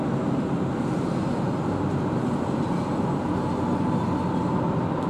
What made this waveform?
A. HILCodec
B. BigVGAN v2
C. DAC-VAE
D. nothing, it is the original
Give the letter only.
D